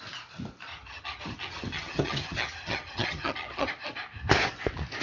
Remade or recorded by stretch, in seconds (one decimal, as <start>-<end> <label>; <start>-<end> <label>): 0.0-0.7 recorded; 0.7-3.7 remade; 3.7-5.0 recorded